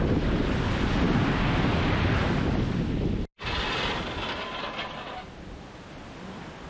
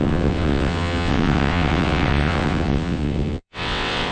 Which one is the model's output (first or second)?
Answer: second